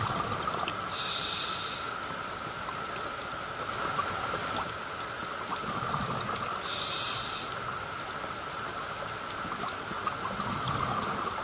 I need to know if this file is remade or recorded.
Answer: recorded